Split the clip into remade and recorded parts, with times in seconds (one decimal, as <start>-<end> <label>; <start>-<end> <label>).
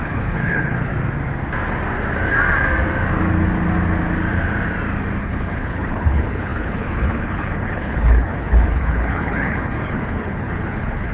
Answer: 0.0-0.9 remade; 0.9-5.2 recorded; 5.2-11.1 remade